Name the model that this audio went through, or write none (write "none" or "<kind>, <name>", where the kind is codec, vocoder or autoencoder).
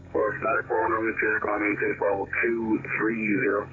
codec, SNAC